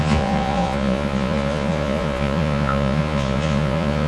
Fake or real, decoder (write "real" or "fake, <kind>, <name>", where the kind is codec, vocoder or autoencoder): fake, vocoder, Vocos